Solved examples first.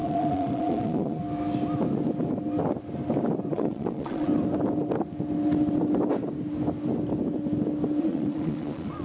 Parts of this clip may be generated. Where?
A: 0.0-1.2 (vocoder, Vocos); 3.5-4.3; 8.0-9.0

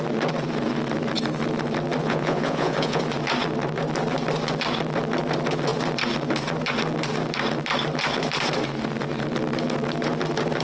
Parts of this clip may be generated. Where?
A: 2.0-3.0 (vocoder, Vocos)

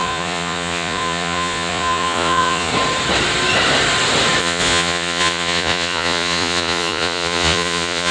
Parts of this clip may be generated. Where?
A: 0.0-2.7 (vocoder, Vocos); 4.4-8.1